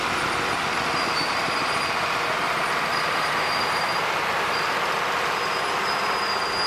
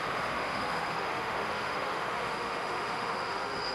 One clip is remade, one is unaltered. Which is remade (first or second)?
second